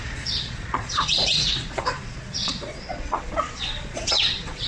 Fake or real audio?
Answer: fake